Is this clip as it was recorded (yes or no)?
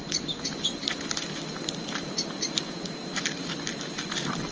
yes